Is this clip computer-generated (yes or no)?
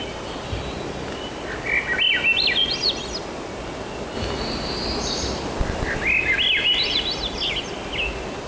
no